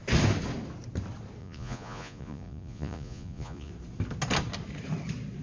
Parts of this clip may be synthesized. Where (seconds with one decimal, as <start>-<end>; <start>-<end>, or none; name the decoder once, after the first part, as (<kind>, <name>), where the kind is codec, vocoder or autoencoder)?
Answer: 1.4-3.7 (vocoder, Vocos)